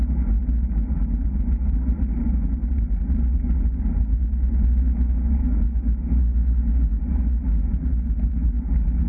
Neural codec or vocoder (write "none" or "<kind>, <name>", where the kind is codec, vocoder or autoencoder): none